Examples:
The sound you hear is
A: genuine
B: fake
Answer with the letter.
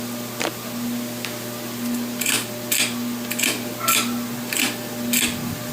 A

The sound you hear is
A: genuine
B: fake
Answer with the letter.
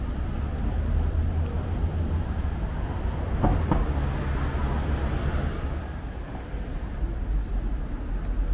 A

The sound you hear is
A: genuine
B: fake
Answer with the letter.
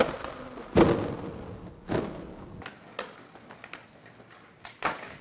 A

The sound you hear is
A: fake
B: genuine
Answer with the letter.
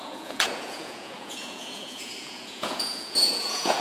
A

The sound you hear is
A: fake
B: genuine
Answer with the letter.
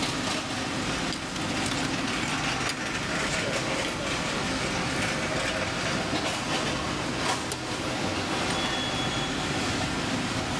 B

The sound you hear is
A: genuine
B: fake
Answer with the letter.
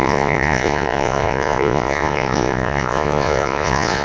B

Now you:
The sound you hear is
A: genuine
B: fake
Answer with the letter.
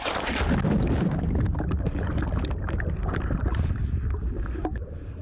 A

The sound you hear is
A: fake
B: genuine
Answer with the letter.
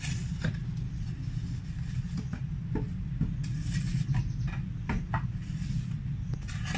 B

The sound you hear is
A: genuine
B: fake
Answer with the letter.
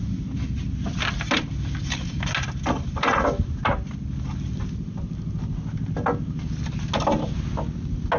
A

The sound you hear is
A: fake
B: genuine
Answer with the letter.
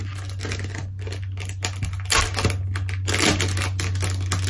B